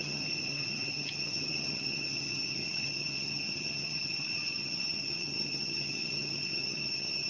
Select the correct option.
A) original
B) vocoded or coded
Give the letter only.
B